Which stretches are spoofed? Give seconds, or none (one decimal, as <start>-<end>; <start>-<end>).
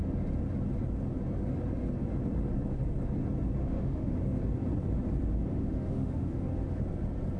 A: 3.6-4.4; 5.5-6.7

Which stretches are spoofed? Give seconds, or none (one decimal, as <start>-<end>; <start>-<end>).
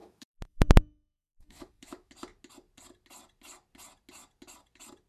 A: 0.0-2.1